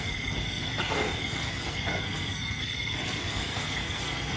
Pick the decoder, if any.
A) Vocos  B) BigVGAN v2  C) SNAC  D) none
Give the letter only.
C